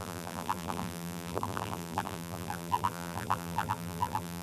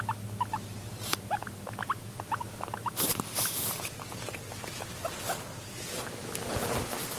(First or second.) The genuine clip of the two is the second